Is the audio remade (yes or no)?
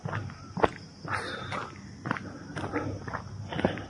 no